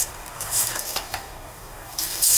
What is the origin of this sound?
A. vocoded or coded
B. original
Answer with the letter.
A